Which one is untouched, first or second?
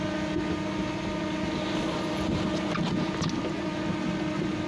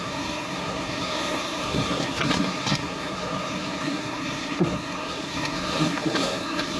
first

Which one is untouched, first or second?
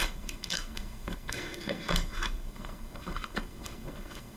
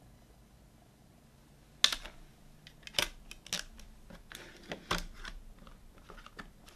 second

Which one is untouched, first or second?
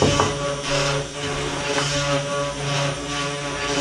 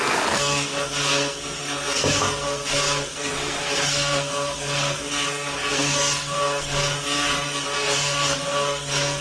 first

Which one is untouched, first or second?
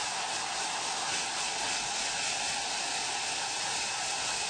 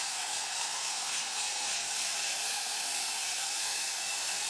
first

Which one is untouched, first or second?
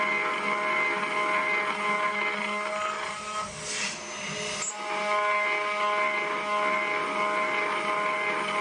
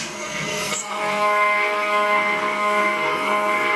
first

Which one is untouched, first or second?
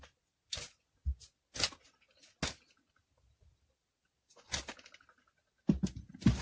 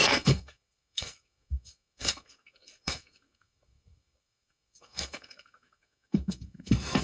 first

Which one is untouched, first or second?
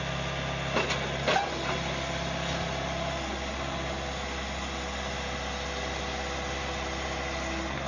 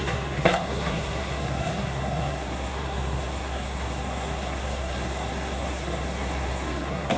first